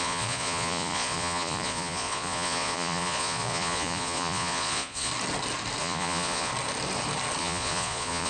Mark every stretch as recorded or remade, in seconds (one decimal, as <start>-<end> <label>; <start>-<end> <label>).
0.0-5.1 remade; 5.1-5.8 recorded; 5.8-6.5 remade; 6.5-7.4 recorded; 7.4-8.3 remade